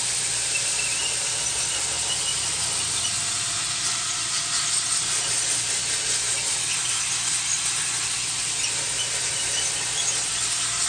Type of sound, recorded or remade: recorded